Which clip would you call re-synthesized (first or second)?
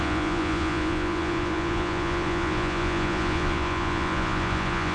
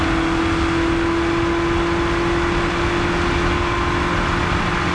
first